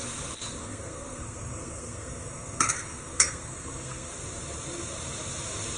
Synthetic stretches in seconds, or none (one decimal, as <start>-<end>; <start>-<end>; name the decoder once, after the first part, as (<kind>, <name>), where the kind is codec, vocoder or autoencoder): 0.6-4.1 (codec, SNAC)

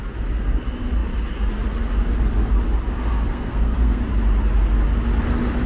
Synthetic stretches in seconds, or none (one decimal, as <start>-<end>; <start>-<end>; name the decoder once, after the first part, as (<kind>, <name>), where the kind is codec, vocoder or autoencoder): 3.3-4.0 (codec, SNAC)

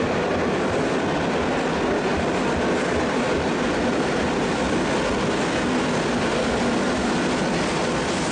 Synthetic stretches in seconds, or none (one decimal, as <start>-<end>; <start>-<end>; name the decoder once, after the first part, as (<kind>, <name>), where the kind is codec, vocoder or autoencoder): none

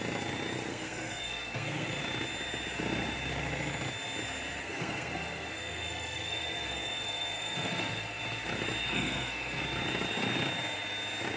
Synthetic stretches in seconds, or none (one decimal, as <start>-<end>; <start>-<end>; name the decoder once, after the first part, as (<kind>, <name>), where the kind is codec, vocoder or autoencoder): 0.7-1.9 (codec, SNAC); 4.6-8.2; 8.9-9.6

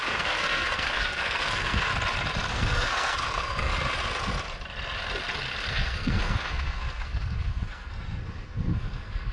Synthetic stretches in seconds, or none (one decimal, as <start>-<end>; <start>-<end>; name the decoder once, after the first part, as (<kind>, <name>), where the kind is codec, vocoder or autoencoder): 0.0-1.9 (codec, SNAC); 2.5-3.7; 5.7-9.3

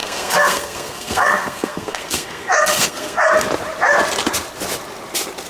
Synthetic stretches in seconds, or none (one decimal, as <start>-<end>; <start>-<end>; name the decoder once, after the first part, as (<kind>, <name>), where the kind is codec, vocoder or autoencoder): 0.0-3.3 (codec, SNAC)

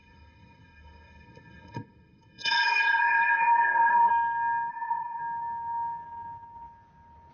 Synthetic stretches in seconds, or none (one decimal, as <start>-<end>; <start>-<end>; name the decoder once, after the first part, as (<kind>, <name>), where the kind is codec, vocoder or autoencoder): 0.0-4.1 (codec, SNAC); 4.7-5.2

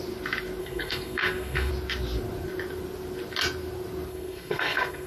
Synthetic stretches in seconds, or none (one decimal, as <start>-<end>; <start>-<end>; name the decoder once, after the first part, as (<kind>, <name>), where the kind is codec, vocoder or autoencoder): 0.6-1.7 (codec, SNAC); 4.1-5.1